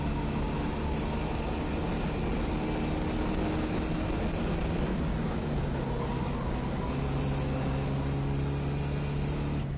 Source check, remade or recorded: recorded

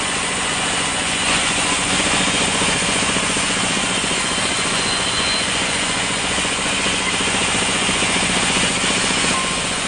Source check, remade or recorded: remade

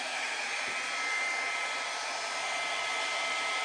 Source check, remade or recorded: recorded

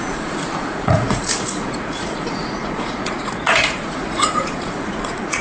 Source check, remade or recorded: remade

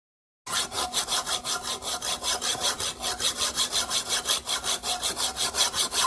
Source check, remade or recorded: recorded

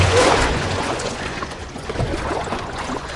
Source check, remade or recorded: remade